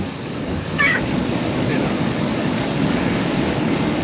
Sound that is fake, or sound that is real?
fake